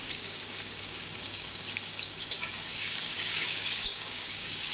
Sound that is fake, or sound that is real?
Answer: fake